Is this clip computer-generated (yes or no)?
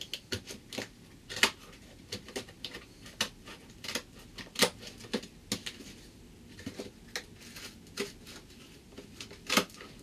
no